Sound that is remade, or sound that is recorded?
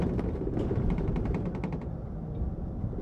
remade